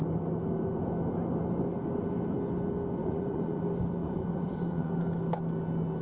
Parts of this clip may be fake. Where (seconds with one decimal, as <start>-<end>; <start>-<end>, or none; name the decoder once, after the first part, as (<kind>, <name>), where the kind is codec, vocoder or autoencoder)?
3.0-3.6 (vocoder, Vocos); 4.0-4.9